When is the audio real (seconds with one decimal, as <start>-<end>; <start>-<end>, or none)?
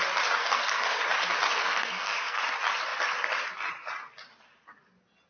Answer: 0.0-0.4; 1.0-1.6; 2.4-5.3